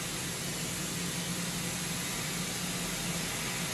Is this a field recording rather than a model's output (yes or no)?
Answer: yes